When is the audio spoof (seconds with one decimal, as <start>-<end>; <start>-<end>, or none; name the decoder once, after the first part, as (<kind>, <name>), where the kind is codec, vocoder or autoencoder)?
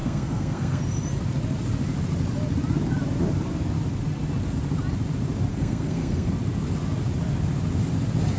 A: 0.0-0.8 (codec, SNAC); 5.5-6.3